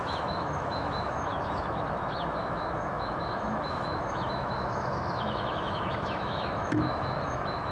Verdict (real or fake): fake